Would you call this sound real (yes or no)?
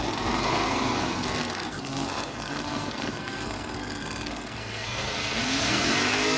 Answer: no